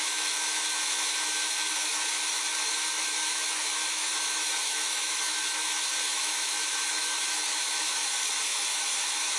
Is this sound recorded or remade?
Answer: remade